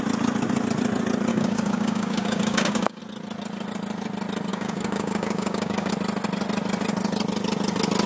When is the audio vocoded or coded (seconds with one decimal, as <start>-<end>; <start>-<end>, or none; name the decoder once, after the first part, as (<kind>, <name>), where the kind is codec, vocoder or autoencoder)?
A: 1.3-3.0 (codec, DAC); 4.5-5.9